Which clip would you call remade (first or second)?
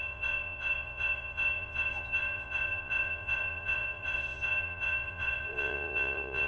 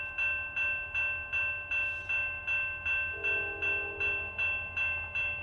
first